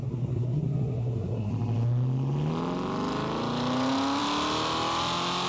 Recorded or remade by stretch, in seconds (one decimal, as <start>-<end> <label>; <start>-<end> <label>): 0.0-1.5 remade; 1.5-5.5 recorded